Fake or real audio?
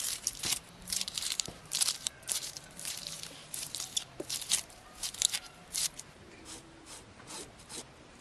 fake